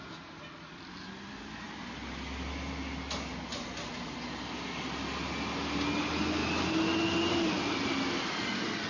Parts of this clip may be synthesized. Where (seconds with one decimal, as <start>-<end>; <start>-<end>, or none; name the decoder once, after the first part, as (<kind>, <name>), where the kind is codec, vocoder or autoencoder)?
none